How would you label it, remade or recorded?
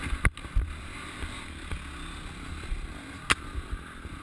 recorded